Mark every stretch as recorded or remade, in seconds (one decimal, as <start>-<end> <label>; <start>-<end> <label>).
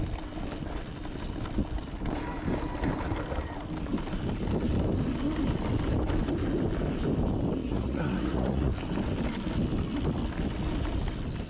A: 0.0-7.6 recorded; 7.6-8.7 remade; 8.7-11.5 recorded